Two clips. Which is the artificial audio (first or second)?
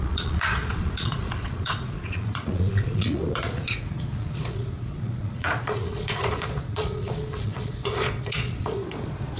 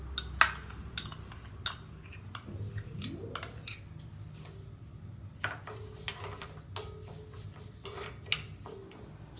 first